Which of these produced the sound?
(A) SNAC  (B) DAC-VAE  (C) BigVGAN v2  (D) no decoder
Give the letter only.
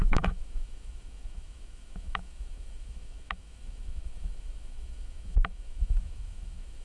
B